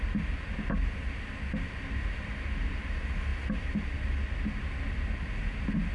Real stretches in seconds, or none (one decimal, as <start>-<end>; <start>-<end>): 0.0-5.9